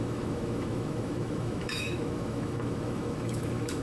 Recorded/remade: remade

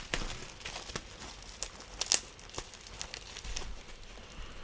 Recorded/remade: recorded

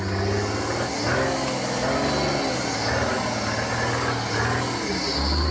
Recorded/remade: recorded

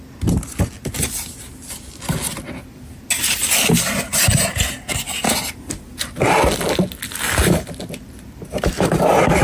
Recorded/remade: recorded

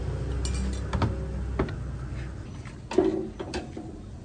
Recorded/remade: recorded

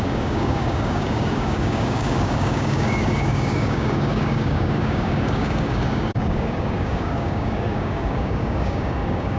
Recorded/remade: remade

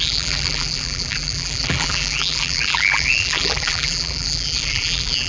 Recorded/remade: remade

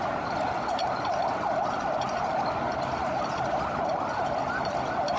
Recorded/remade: recorded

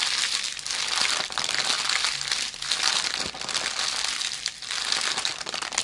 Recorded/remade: remade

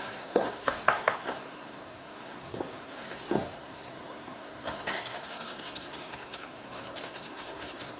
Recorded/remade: remade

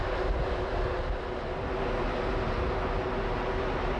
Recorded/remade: recorded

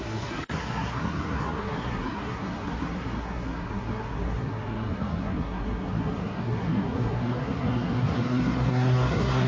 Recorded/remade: remade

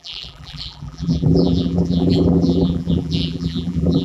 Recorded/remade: remade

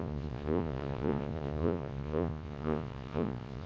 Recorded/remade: remade